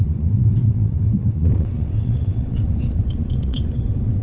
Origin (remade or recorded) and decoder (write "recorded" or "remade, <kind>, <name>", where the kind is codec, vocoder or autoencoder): remade, vocoder, WaveNeXt